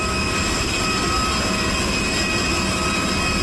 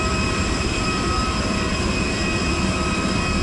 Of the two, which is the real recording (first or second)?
first